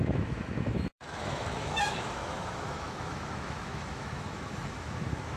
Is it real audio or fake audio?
fake